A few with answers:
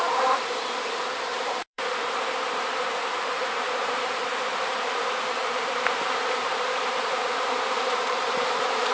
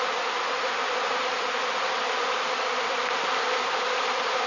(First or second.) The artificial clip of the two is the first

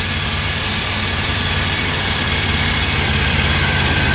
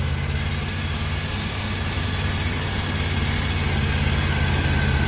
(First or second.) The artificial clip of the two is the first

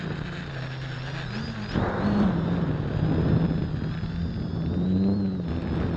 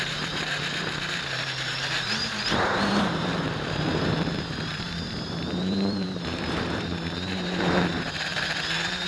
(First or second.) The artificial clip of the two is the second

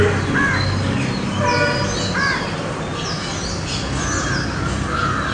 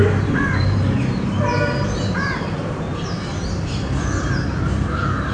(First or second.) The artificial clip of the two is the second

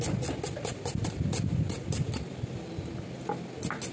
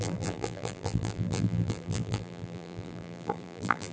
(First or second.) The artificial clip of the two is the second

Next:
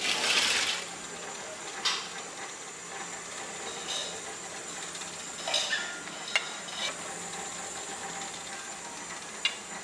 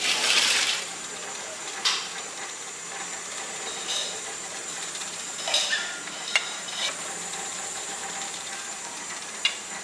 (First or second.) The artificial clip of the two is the second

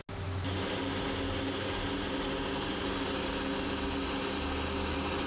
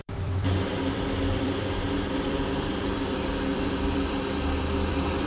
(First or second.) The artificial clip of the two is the second